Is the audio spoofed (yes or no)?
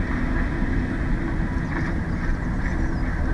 no